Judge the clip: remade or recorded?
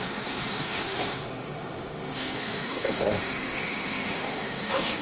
remade